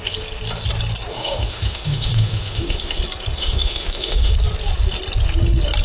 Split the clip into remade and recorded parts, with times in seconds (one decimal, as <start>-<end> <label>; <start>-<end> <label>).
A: 0.0-1.1 recorded; 1.1-3.0 remade; 3.0-3.4 recorded; 3.4-4.3 remade; 4.3-5.8 recorded